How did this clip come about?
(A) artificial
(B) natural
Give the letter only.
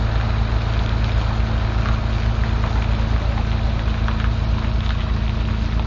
B